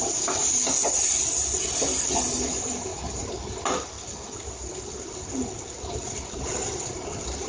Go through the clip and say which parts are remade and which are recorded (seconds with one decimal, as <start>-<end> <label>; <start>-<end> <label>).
0.0-7.5 recorded